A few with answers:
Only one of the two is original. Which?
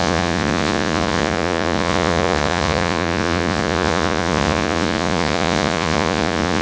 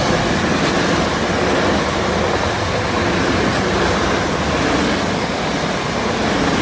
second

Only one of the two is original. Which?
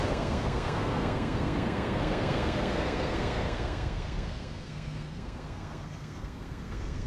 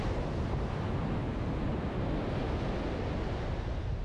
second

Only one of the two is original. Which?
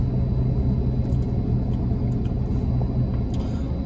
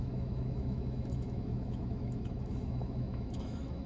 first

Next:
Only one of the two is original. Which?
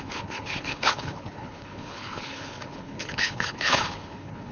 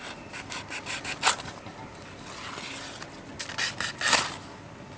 second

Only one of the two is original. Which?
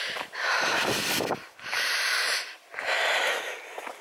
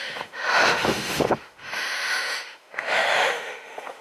first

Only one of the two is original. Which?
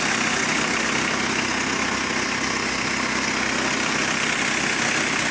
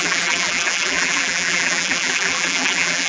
first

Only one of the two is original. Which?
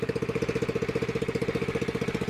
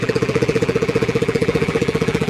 first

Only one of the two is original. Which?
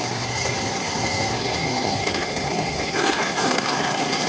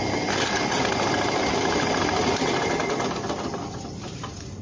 second